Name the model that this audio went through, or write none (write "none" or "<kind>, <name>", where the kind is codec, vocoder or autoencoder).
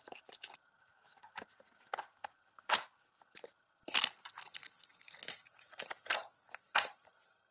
none